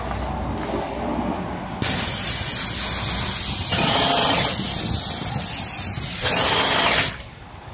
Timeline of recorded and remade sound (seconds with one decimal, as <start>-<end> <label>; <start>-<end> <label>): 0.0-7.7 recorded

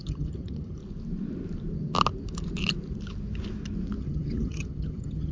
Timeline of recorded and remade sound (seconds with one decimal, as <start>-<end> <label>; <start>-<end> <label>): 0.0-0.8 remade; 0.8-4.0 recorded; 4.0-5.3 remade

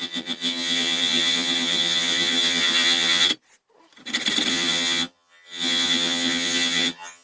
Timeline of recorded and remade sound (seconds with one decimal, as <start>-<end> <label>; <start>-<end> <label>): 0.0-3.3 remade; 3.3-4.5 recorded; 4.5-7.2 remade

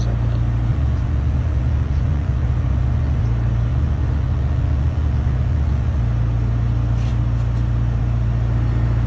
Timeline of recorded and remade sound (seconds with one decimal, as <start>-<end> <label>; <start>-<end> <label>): 0.0-0.7 recorded; 0.7-3.2 remade; 3.2-3.7 recorded; 3.7-6.0 remade; 6.0-9.1 recorded